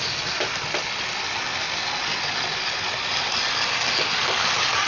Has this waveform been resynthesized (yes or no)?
no